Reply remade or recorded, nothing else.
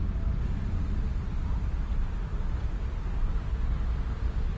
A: recorded